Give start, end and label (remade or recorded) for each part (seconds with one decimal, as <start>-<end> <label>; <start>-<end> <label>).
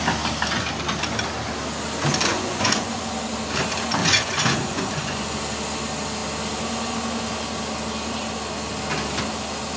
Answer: 0.0-2.3 recorded; 2.3-3.0 remade; 3.0-4.0 recorded; 4.0-5.4 remade; 5.4-9.8 recorded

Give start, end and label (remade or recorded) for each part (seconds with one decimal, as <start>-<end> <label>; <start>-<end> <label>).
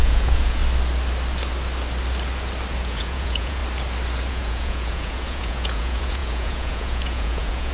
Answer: 0.0-0.6 remade; 0.6-2.8 recorded; 2.8-3.6 remade; 3.6-4.3 recorded; 4.3-7.7 remade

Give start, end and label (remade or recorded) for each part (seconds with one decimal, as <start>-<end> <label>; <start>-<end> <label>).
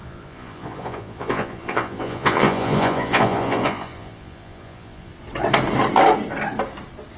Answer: 0.0-5.1 remade; 5.1-7.2 recorded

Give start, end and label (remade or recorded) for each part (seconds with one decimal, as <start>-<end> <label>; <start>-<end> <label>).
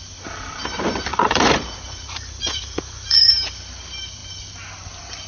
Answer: 0.0-1.1 recorded; 1.1-3.3 remade; 3.3-5.3 recorded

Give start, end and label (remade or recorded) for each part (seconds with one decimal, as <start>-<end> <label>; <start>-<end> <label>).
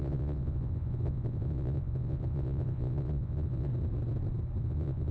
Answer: 0.0-3.7 remade; 3.7-4.6 recorded; 4.6-5.1 remade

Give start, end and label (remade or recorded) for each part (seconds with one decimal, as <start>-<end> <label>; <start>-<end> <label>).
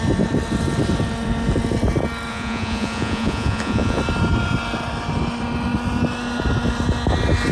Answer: 0.0-2.3 recorded; 2.3-4.0 remade; 4.0-7.5 recorded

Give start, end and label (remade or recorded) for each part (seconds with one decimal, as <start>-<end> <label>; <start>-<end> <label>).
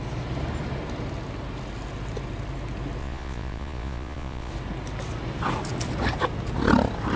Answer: 0.0-3.0 recorded; 3.0-4.5 remade; 4.5-7.2 recorded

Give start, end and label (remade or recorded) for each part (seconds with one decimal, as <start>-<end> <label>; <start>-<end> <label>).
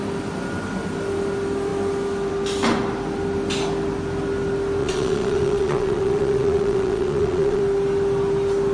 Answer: 0.0-4.8 recorded; 4.8-7.6 remade; 7.6-8.7 recorded